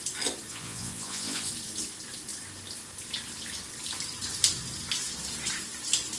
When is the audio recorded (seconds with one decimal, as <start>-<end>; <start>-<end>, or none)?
0.0-0.5; 1.5-6.2